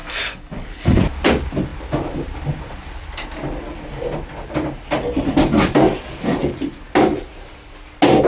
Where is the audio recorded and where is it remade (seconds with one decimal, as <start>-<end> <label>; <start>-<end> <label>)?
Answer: 0.0-1.0 remade; 1.0-8.3 recorded